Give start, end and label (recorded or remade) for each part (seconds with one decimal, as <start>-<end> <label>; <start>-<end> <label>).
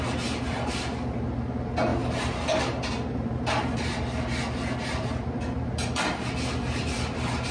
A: 0.0-7.5 recorded